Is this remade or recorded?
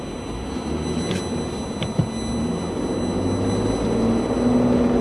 recorded